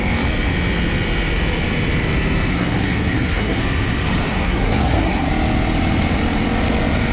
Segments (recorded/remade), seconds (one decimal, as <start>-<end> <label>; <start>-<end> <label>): 0.0-2.5 recorded; 2.5-3.6 remade; 3.6-4.3 recorded; 4.3-5.3 remade; 5.3-7.1 recorded